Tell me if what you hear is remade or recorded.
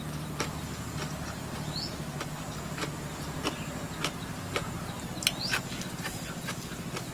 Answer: recorded